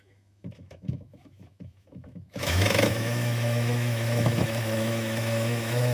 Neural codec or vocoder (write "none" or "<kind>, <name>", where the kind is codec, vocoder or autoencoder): autoencoder, DAC-VAE